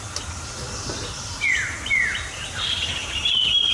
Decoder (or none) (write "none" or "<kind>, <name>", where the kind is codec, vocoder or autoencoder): none